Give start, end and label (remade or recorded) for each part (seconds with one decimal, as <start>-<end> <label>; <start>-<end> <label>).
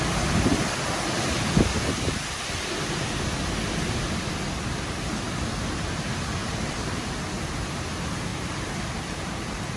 0.0-6.4 recorded; 6.4-7.1 remade; 7.1-8.3 recorded; 8.3-9.8 remade